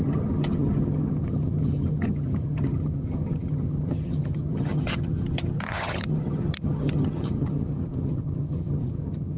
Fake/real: fake